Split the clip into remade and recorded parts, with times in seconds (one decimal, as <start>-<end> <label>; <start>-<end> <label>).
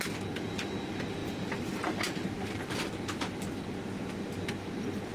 0.0-1.2 recorded; 1.2-3.3 remade; 3.3-5.1 recorded